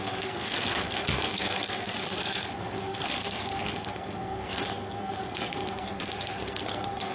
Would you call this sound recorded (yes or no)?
no